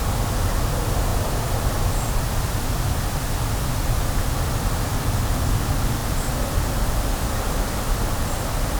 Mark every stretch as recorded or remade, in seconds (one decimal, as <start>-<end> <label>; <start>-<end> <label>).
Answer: 0.0-8.8 recorded